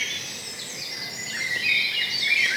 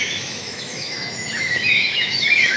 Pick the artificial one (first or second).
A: second